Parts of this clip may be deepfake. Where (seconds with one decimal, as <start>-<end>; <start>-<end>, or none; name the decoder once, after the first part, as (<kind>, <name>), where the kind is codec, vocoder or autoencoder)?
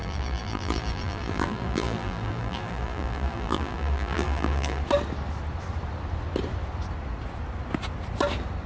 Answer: 0.0-4.8 (vocoder, BigVGAN v2)